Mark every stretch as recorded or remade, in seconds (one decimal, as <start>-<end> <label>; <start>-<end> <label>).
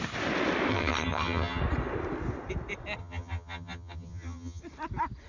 0.0-0.7 recorded; 0.7-1.6 remade; 1.6-3.0 recorded; 3.0-4.6 remade; 4.6-5.3 recorded